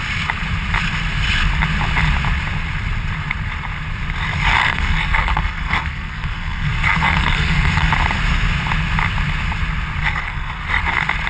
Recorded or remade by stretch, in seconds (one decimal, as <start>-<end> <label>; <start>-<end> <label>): 0.0-4.6 recorded; 4.6-7.9 remade; 7.9-10.0 recorded; 10.0-10.6 remade; 10.6-11.3 recorded